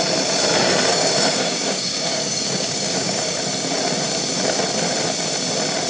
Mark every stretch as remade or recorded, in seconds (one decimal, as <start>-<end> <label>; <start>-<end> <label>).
0.0-0.9 recorded; 0.9-3.4 remade; 3.4-5.9 recorded

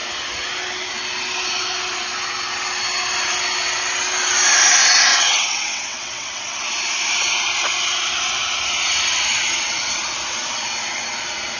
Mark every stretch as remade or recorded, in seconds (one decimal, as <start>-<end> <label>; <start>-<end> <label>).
0.0-5.1 recorded; 5.1-6.6 remade; 6.6-11.6 recorded